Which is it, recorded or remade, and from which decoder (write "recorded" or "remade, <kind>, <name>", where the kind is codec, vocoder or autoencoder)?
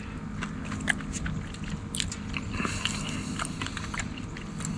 recorded